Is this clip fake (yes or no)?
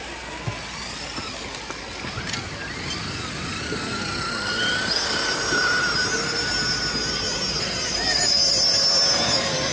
no